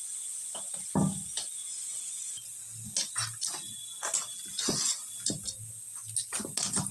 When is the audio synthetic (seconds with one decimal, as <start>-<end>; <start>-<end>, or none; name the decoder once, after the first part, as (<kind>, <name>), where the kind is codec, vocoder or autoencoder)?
none